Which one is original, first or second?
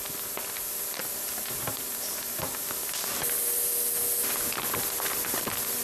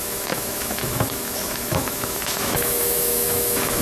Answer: first